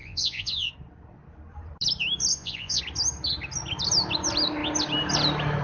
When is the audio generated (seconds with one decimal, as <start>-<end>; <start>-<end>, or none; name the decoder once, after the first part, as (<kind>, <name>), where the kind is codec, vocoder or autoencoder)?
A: 0.0-0.7 (vocoder, Vocos); 2.3-2.8